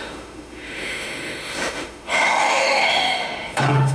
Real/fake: fake